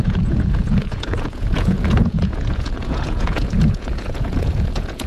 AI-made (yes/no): yes